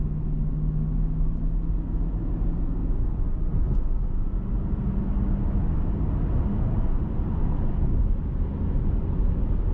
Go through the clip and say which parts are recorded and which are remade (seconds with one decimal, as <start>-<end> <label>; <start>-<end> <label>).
0.0-9.7 recorded